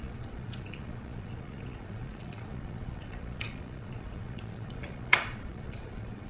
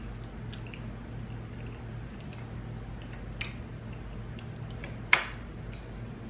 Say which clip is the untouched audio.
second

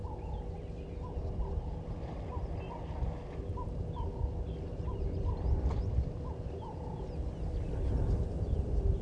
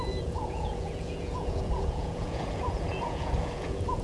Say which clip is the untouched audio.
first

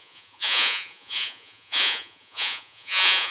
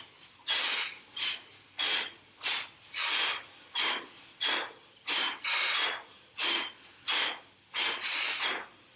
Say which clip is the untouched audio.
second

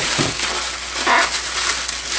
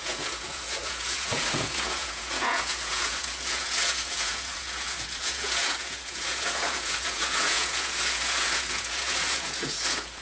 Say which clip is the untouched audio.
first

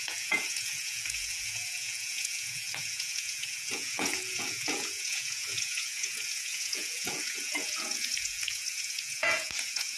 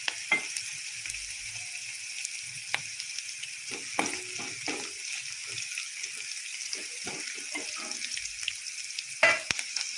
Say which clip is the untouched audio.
second